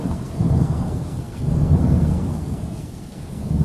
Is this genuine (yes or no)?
no